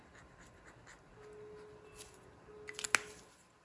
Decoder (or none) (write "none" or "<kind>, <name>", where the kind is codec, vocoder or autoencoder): none